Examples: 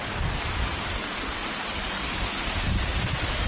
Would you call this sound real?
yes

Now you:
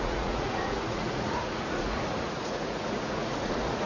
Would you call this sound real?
no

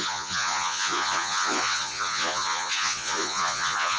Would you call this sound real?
no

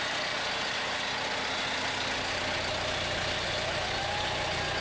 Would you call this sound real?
yes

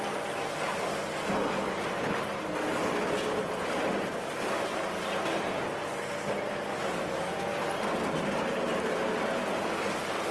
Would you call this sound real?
yes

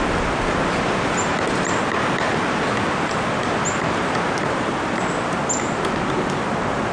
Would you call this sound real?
yes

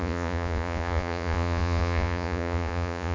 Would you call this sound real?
no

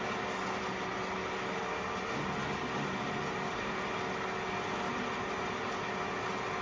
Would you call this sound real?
yes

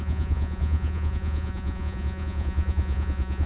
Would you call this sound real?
no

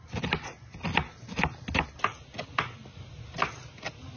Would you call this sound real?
yes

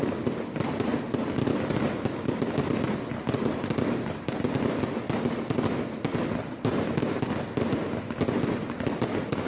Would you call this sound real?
yes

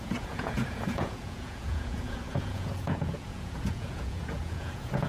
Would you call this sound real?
no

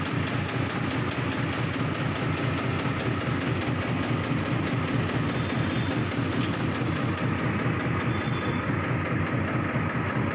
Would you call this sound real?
yes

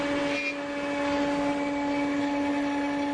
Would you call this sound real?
yes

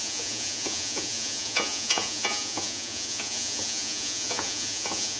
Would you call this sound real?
no